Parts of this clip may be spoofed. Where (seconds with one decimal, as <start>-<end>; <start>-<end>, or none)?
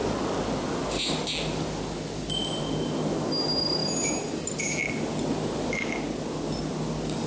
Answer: none